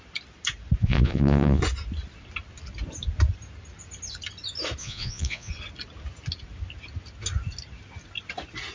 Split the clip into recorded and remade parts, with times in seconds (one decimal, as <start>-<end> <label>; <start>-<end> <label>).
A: 0.0-0.8 recorded; 0.8-1.6 remade; 1.6-4.8 recorded; 4.8-5.5 remade; 5.5-8.7 recorded